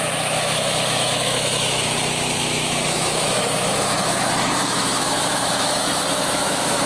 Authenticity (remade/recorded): remade